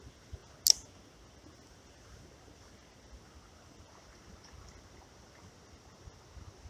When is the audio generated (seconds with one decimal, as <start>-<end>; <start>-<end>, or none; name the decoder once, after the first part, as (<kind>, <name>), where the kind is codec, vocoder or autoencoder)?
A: none